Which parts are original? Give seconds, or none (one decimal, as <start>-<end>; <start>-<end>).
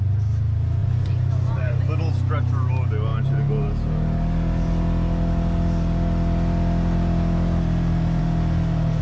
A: 0.0-0.8; 1.8-9.0